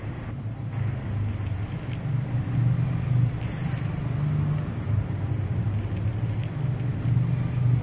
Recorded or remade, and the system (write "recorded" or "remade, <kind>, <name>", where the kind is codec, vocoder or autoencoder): recorded